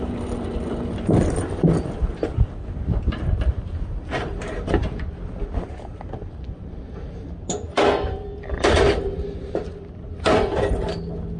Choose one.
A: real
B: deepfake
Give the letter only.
A